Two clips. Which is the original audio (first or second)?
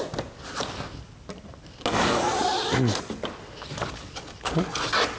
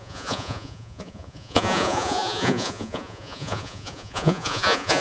first